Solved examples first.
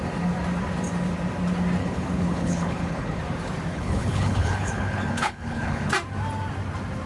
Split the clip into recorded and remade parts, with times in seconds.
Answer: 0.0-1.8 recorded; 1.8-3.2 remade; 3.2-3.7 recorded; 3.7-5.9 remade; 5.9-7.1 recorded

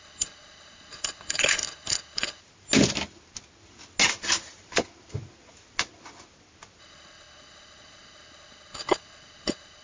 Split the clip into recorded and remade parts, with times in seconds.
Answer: 0.0-2.4 remade; 2.4-6.8 recorded; 6.8-9.8 remade